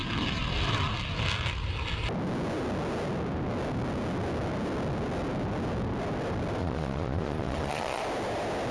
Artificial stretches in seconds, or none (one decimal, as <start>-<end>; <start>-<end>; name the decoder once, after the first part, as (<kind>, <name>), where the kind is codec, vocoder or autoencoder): 6.6-8.0 (vocoder, Vocos)

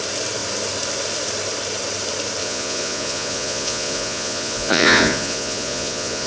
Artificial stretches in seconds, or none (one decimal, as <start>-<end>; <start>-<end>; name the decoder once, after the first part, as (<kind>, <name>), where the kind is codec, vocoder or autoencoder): 2.4-6.3 (vocoder, Vocos)

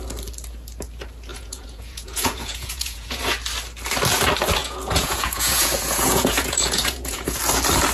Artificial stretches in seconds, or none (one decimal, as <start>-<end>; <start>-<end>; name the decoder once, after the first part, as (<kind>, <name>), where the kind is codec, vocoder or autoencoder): 1.3-3.2 (vocoder, Vocos); 4.6-7.4

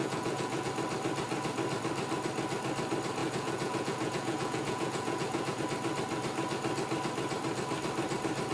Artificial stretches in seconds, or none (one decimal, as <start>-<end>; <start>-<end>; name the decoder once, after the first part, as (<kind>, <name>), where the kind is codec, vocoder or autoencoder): 0.0-0.7 (vocoder, Vocos); 3.2-5.6

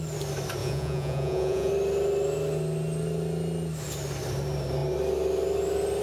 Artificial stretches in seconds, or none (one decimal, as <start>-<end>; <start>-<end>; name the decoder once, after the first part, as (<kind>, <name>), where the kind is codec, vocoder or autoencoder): 0.6-1.7 (vocoder, Vocos)

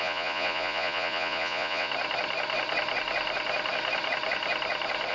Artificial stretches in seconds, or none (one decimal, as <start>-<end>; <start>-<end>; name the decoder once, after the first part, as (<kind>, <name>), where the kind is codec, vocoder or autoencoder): 0.0-1.9 (vocoder, Vocos)

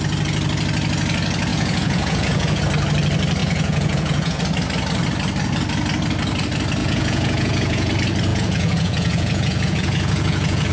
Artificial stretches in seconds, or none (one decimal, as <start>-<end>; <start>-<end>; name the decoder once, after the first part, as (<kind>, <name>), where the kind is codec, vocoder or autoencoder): 1.5-2.6 (vocoder, Vocos); 3.4-4.4; 6.8-7.9; 8.3-10.7

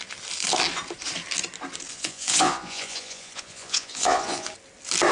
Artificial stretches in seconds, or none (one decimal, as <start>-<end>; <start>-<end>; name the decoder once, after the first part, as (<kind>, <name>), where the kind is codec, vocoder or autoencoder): 1.9-4.5 (vocoder, Vocos)